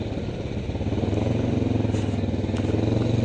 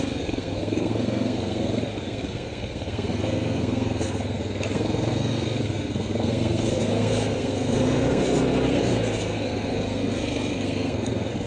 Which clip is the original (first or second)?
first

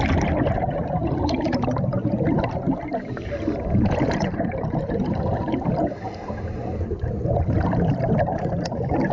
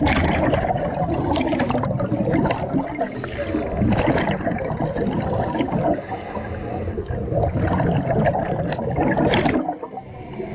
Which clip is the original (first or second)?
second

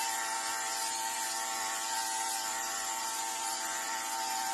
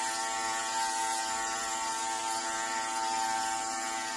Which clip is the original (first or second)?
second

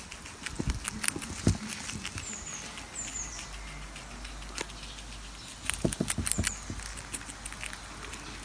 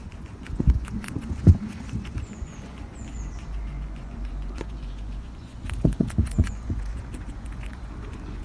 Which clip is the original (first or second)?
first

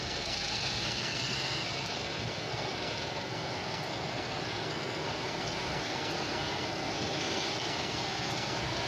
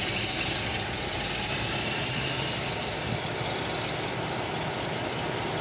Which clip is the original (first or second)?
second